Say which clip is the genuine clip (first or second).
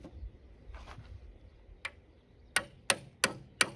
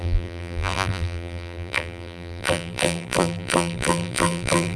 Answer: first